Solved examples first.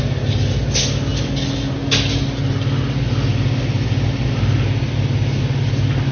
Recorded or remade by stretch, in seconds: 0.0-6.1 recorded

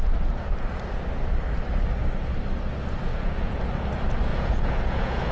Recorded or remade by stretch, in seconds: 0.0-3.1 recorded; 3.1-3.6 remade; 3.6-4.3 recorded; 4.3-5.3 remade